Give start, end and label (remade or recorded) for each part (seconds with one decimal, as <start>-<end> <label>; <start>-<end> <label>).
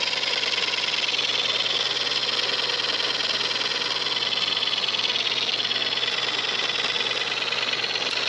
0.0-8.3 recorded